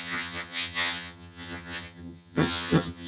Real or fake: fake